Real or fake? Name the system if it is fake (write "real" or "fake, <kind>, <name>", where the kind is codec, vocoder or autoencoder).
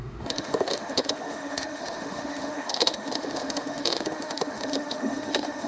fake, autoencoder, DAC-VAE